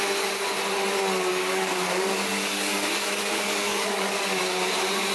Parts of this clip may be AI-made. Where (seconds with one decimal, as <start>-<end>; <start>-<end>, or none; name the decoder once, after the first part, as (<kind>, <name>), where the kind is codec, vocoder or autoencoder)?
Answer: 1.3-4.4 (codec, DAC)